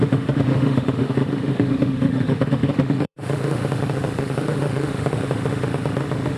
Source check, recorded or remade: remade